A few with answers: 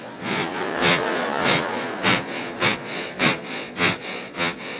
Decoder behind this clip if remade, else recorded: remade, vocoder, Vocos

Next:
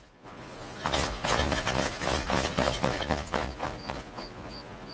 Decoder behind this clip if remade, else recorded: remade, vocoder, Vocos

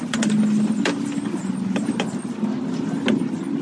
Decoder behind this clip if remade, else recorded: recorded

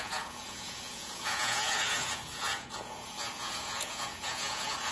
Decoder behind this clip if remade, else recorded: remade, vocoder, Vocos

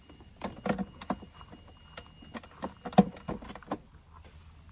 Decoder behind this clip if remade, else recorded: recorded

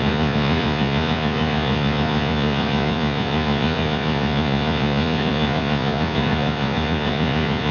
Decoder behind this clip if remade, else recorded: remade, vocoder, Vocos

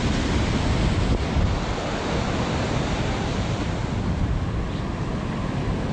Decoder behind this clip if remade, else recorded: recorded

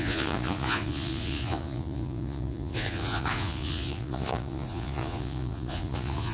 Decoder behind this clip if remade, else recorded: remade, vocoder, Vocos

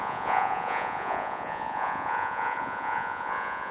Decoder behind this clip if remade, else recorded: remade, vocoder, Vocos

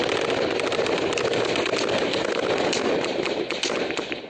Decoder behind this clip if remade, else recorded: recorded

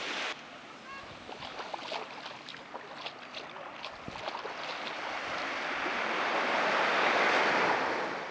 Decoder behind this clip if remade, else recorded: recorded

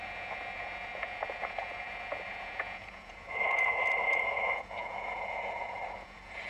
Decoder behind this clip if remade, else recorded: remade, vocoder, Vocos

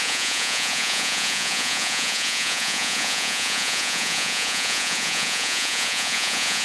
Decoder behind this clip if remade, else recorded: remade, vocoder, Vocos